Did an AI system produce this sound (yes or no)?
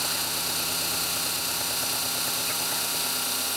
no